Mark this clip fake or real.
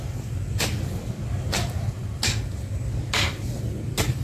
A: real